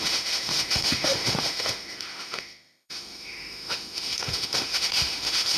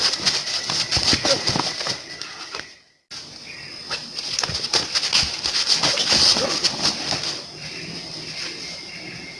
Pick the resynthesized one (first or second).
first